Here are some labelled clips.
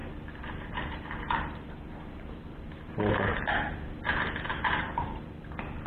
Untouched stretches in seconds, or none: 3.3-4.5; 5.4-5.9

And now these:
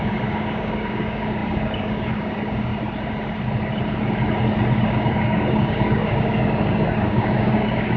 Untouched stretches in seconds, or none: 2.7-4.9

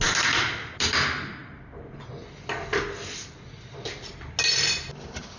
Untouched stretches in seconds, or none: 0.0-5.4

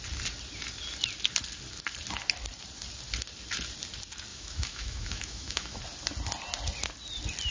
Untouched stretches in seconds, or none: 0.0-4.3; 5.8-7.5

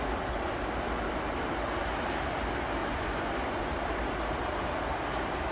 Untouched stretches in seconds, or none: 0.0-2.8; 3.7-5.5

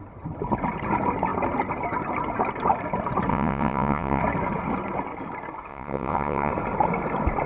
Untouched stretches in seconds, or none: 0.0-3.3; 4.2-5.7; 6.5-7.5

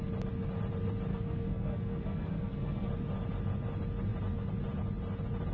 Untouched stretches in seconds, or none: 0.0-1.1; 2.9-5.5